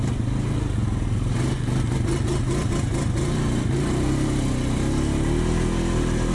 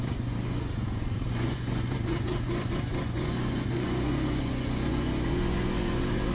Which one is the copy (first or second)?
second